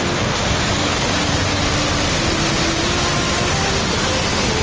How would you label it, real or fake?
real